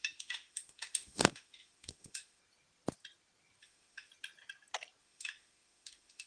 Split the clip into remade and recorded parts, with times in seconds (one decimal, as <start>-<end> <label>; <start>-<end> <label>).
0.0-2.4 remade; 2.4-3.6 recorded; 3.6-4.1 remade; 4.1-5.0 recorded; 5.0-6.3 remade